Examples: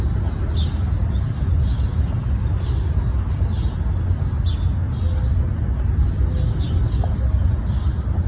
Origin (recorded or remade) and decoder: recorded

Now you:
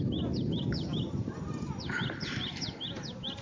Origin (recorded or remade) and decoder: recorded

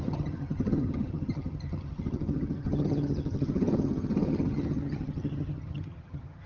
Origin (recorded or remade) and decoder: remade, vocoder, HiFi-GAN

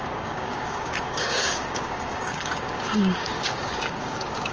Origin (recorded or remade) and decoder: remade, codec, DAC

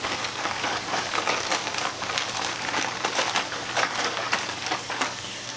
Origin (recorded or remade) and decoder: remade, codec, DAC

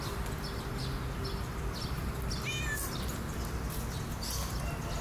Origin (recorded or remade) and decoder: recorded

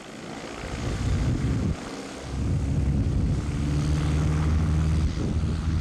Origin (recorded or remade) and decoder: recorded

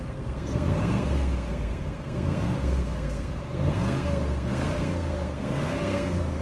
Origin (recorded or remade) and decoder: remade, codec, SNAC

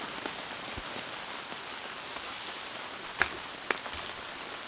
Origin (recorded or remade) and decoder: recorded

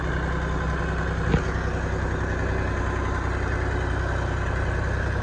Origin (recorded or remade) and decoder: recorded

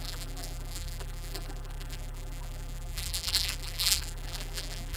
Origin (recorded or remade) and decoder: remade, vocoder, BigVGAN v2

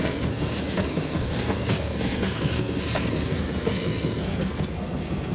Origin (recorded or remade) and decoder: remade, codec, SNAC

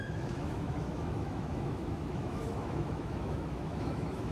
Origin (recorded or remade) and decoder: remade, autoencoder, DAC-VAE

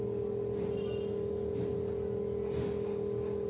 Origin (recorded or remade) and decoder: recorded